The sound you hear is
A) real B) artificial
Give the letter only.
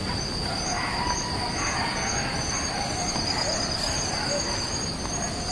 A